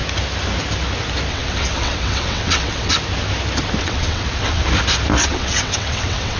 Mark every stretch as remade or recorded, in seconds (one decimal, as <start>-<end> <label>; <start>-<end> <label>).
0.0-1.3 recorded; 1.3-2.9 remade; 2.9-3.8 recorded; 3.8-4.6 remade; 4.6-5.2 recorded; 5.2-6.4 remade